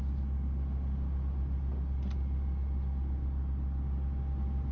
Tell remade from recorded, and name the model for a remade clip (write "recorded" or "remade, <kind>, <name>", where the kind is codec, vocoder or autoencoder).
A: recorded